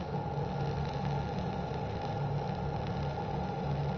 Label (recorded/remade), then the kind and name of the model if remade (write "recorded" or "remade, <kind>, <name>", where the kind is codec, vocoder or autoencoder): recorded